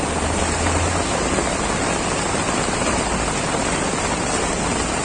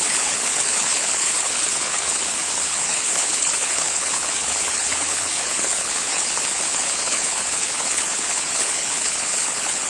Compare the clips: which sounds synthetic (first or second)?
second